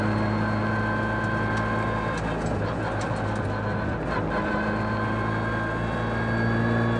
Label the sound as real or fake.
real